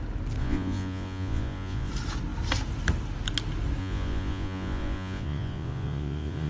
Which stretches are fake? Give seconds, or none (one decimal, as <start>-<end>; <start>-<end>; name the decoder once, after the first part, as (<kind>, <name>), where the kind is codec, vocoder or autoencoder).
0.4-1.9 (vocoder, Vocos); 3.8-6.5